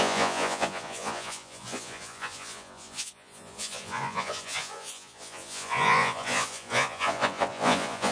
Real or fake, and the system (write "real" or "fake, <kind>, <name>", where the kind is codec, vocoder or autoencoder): fake, vocoder, Vocos